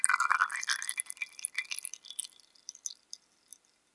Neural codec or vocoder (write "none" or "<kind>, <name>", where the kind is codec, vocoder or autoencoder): none